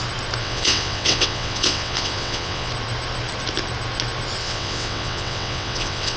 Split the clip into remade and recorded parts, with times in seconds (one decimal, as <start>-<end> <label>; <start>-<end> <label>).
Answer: 0.0-0.4 recorded; 0.4-2.7 remade; 2.7-4.4 recorded; 4.4-6.2 remade